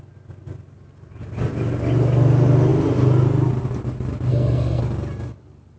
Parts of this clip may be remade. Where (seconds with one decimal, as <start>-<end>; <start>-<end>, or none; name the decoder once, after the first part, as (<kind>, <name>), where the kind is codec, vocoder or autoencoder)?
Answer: 4.3-4.8 (codec, SNAC)